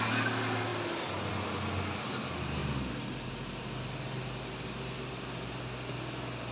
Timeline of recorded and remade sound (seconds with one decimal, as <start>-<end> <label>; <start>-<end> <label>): 0.0-6.5 recorded